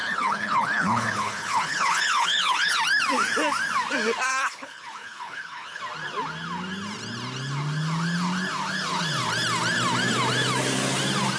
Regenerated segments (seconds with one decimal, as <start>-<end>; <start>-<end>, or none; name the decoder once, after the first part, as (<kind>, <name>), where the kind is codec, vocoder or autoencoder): 0.0-2.8 (codec, HILCodec); 4.3-5.8